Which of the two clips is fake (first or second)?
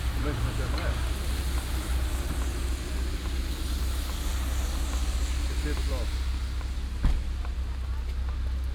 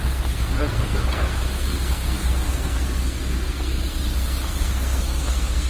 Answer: second